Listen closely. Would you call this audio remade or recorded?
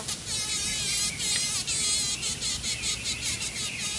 recorded